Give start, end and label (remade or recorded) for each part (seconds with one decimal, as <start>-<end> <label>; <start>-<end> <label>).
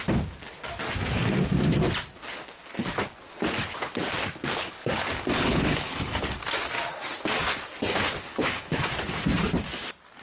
0.0-5.3 recorded; 5.3-6.2 remade; 6.2-8.3 recorded; 8.3-8.8 remade; 8.8-10.2 recorded